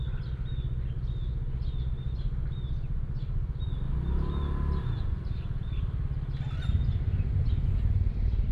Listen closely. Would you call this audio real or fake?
real